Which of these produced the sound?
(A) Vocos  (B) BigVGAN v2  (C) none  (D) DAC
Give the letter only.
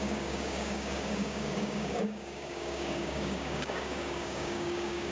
D